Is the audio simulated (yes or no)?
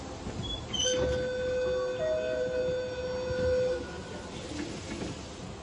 no